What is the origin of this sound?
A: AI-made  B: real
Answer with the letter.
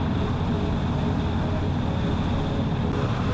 B